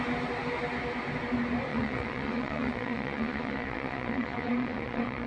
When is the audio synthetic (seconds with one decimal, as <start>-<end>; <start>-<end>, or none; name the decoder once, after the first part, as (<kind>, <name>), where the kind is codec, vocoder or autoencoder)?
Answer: 1.7-5.3 (vocoder, Vocos)